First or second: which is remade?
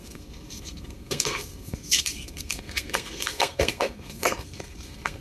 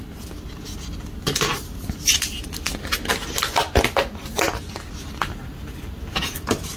first